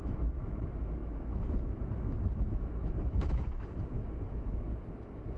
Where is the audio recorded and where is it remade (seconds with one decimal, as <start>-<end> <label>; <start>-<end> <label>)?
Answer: 0.0-5.4 remade